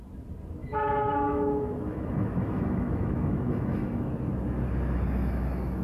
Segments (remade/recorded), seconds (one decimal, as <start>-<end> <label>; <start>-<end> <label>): 0.0-0.6 recorded; 0.6-4.1 remade; 4.1-5.8 recorded